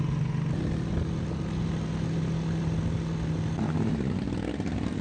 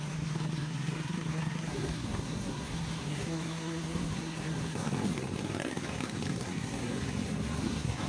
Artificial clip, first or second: second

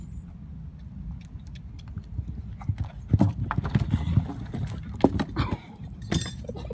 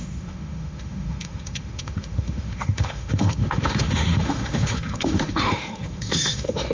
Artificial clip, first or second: second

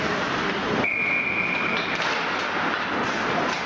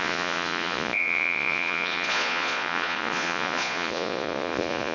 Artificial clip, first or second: second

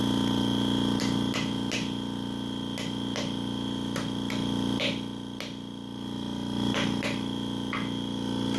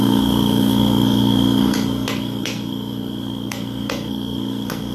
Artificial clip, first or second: second